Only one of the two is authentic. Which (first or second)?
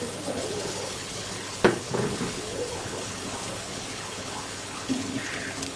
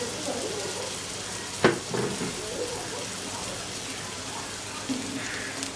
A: second